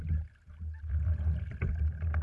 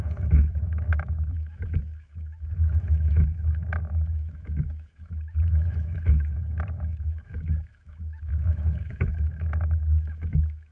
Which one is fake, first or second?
second